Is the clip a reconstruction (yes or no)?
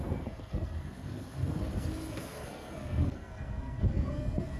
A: yes